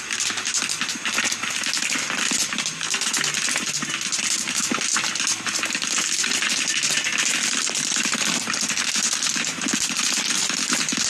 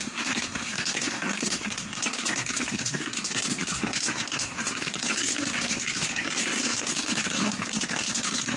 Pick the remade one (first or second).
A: second